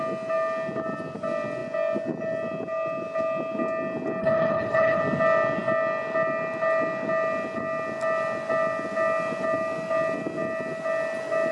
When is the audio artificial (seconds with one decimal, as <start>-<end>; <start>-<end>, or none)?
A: 4.2-5.0